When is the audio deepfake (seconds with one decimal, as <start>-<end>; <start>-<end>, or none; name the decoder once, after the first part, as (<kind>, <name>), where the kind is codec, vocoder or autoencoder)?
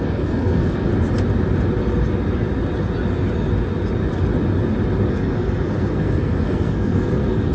0.0-0.9 (codec, SNAC); 5.1-7.5